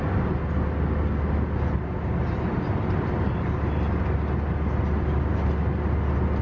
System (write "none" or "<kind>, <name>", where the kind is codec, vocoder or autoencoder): none